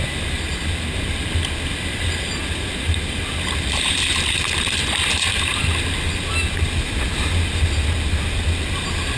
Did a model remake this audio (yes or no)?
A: no